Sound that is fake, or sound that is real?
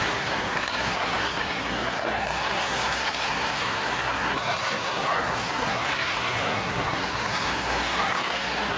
fake